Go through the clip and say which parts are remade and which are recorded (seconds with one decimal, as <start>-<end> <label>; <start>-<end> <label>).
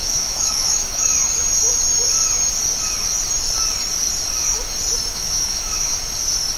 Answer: 0.0-1.1 remade; 1.1-5.1 recorded; 5.1-5.9 remade; 5.9-6.6 recorded